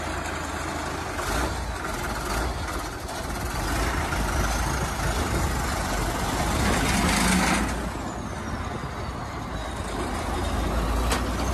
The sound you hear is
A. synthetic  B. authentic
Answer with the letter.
B